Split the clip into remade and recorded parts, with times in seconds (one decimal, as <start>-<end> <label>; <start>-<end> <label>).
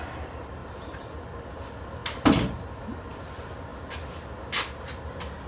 0.0-0.6 recorded; 0.6-1.2 remade; 1.2-5.5 recorded